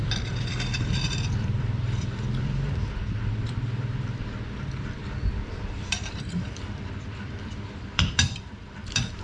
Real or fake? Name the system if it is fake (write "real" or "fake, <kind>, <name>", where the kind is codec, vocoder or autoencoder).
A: fake, vocoder, BigVGAN v2